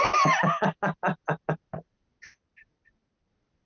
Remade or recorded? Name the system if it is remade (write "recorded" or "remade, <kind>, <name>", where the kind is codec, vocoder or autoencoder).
recorded